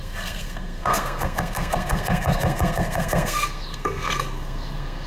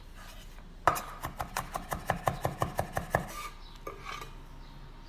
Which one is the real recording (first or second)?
second